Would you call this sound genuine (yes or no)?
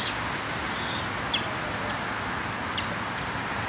yes